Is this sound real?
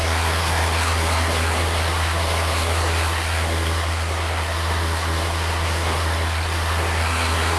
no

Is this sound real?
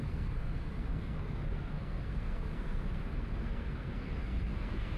no